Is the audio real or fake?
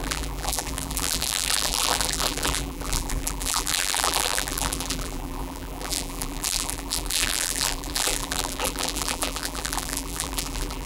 fake